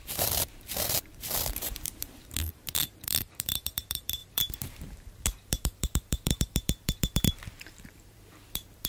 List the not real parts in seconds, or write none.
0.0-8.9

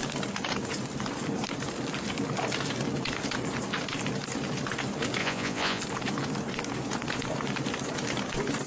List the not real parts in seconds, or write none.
5.2-5.8

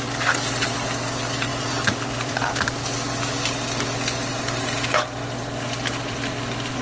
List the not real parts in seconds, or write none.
1.5-2.5

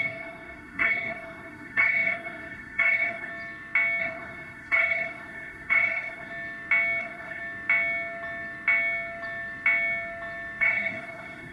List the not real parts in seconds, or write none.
0.0-3.3; 4.0-6.3; 7.0-7.4; 10.6-11.5